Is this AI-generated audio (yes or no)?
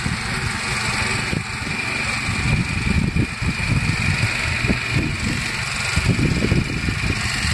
no